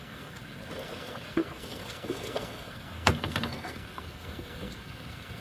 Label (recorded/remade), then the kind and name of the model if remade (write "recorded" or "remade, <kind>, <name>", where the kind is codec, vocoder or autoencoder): remade, codec, SNAC